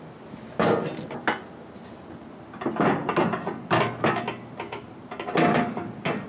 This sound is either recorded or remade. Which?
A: recorded